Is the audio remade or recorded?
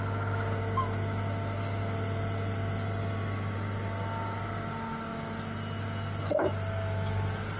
recorded